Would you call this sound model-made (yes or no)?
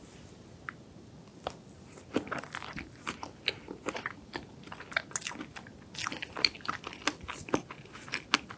no